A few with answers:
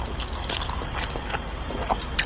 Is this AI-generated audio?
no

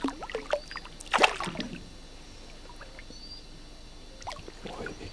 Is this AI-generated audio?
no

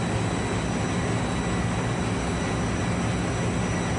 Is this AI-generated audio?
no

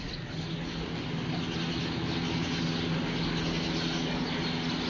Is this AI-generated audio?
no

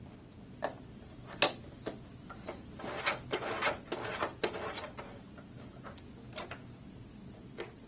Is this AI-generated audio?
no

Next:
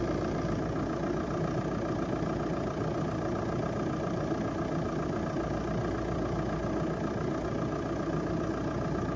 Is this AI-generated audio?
no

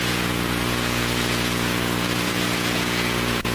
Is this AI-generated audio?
yes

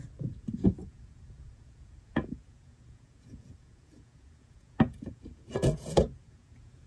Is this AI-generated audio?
yes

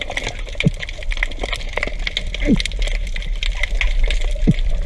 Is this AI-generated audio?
no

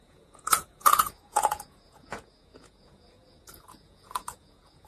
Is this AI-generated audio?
yes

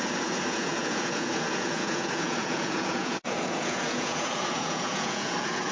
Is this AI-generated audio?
yes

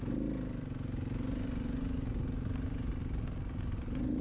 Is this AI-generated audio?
no